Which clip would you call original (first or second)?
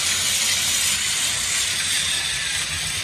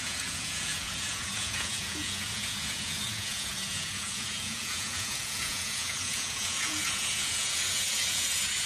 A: first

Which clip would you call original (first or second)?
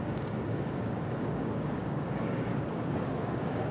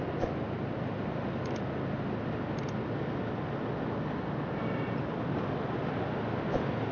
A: second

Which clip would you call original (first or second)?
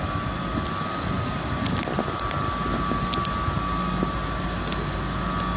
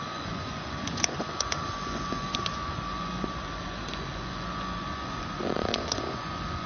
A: first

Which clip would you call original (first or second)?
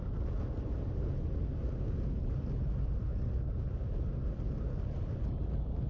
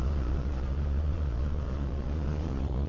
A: first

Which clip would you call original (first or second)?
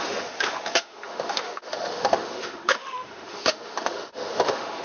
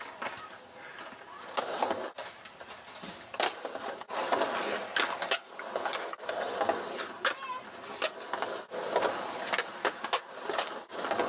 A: second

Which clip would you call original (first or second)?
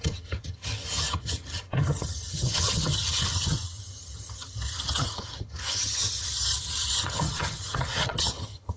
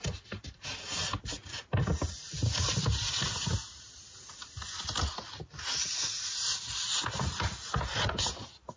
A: second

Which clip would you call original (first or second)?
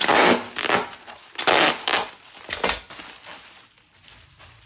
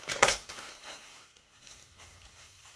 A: first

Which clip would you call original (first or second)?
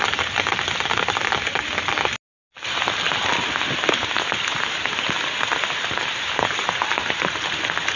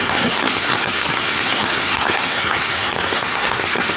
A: first